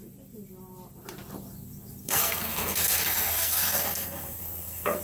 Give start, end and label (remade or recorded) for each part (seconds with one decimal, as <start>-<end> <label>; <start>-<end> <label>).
0.0-2.0 recorded; 2.0-5.0 remade